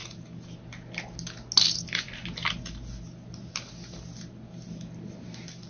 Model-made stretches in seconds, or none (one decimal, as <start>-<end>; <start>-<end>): none